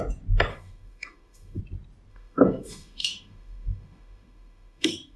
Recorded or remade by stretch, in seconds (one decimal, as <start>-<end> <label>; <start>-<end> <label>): 0.0-0.5 recorded; 0.5-1.6 remade; 1.6-2.1 recorded; 2.1-5.2 remade